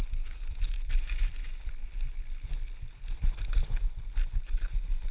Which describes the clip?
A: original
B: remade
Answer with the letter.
A